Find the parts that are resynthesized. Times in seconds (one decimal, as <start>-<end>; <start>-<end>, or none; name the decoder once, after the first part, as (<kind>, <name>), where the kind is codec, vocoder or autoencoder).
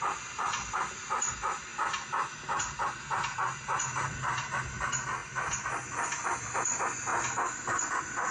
none